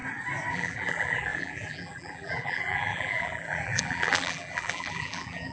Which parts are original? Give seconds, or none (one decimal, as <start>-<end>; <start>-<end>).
0.0-0.5